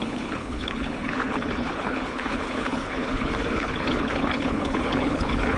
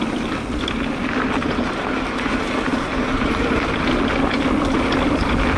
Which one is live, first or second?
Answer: second